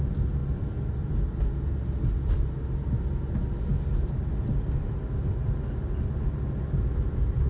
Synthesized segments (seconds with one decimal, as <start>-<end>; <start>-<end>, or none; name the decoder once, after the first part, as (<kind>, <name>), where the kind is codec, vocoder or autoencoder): none